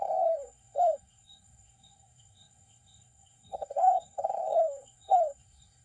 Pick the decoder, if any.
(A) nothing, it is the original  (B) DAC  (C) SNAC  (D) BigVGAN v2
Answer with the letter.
C